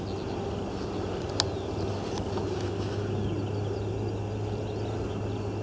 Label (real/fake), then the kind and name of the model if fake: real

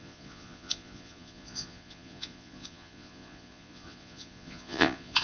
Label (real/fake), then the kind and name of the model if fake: fake, vocoder, Vocos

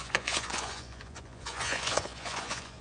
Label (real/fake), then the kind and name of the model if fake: fake, vocoder, Vocos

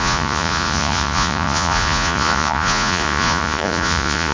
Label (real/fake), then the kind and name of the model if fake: fake, vocoder, Vocos